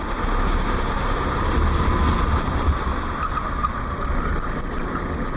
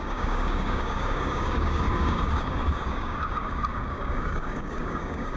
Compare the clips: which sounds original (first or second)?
first